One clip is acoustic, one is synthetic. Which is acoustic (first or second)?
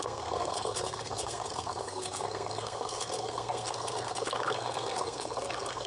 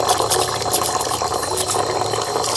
second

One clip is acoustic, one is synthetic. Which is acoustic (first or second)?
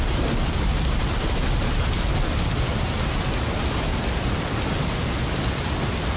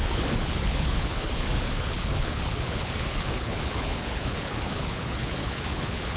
first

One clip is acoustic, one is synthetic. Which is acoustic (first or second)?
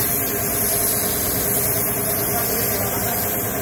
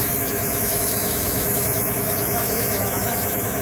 first